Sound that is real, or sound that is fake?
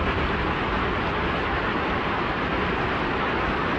real